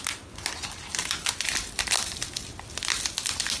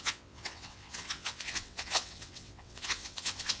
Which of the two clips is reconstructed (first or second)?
second